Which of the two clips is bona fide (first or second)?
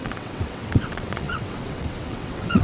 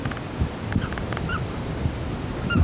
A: second